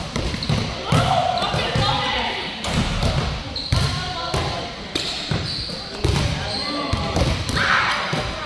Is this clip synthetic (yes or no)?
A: no